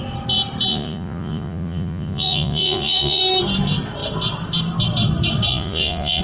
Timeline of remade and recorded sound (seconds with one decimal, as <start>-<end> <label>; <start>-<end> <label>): 0.0-0.7 recorded; 0.7-3.2 remade; 3.2-5.5 recorded; 5.5-6.2 remade